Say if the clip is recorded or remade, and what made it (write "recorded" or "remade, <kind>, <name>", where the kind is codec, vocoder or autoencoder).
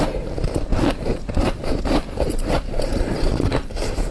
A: remade, vocoder, BigVGAN v2